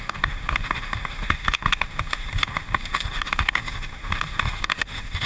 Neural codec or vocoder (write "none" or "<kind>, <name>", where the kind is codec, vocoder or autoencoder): autoencoder, DAC-VAE